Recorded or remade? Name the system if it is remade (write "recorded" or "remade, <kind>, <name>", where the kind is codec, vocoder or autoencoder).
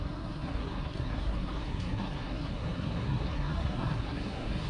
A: remade, codec, SNAC